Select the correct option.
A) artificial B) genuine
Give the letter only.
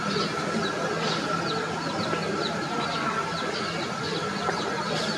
B